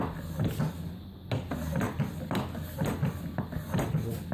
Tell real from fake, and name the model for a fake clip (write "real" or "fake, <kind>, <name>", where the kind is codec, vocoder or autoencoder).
real